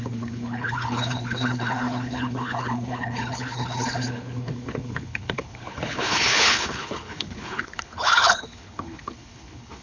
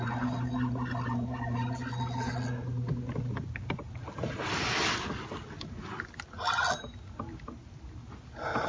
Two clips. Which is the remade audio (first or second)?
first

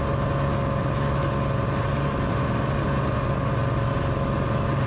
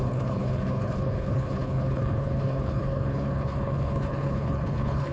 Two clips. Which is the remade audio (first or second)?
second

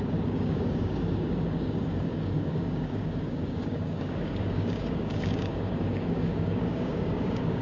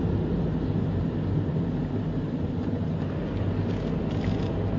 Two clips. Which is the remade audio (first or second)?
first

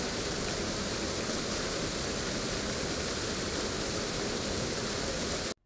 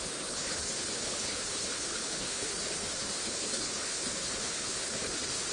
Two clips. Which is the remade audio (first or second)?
second